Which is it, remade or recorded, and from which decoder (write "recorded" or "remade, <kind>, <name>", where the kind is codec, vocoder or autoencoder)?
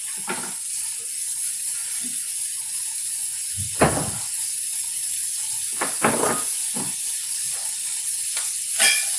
recorded